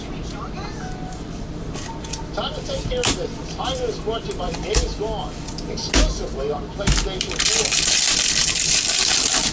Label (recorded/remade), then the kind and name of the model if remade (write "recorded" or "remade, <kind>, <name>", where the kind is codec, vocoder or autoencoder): recorded